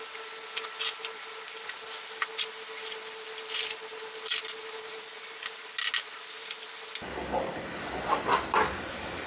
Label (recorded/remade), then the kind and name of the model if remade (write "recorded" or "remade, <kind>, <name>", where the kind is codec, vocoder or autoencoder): recorded